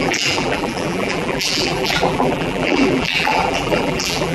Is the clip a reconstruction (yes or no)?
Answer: yes